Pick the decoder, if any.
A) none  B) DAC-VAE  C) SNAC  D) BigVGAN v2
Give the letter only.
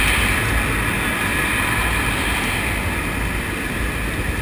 A